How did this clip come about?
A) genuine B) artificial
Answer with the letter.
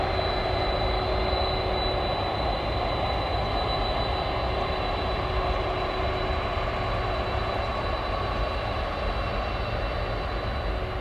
A